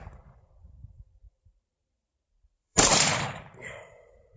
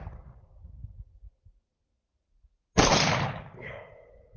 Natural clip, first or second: second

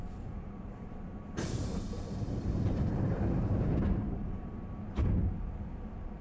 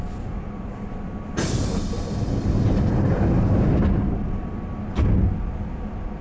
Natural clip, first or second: second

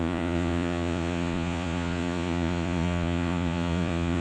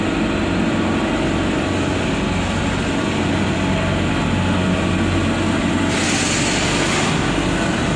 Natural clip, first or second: second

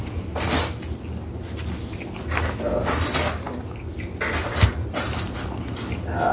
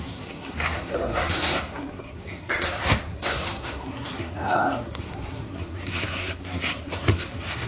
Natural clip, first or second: first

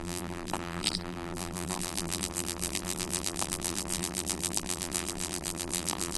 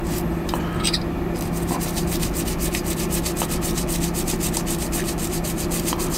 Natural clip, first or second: second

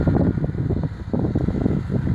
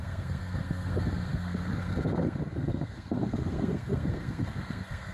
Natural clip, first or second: first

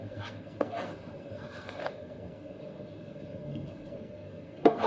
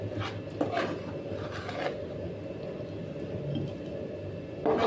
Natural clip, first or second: second